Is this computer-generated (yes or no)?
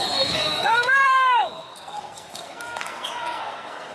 yes